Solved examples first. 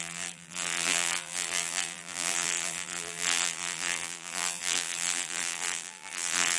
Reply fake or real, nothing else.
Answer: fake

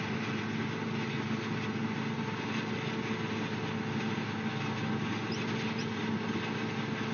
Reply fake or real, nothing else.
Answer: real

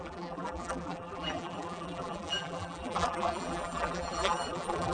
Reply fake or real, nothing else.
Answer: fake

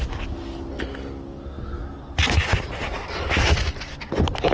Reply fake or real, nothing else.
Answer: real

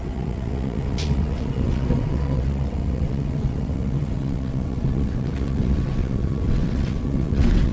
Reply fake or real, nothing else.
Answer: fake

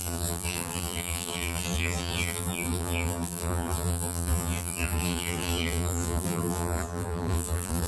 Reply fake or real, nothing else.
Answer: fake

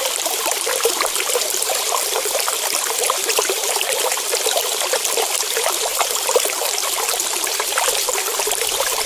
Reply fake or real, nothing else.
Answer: fake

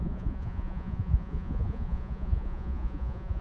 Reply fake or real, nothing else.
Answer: fake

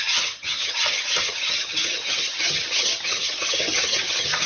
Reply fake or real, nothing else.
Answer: fake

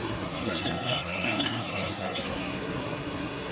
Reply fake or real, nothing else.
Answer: fake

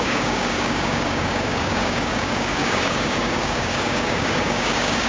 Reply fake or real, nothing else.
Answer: fake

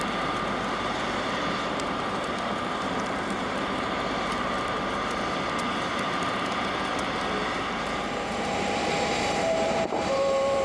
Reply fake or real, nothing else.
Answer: fake